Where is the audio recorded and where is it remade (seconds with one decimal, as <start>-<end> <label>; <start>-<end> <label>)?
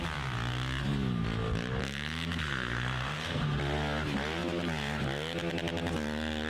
0.0-1.8 recorded; 1.8-3.4 remade; 3.4-6.5 recorded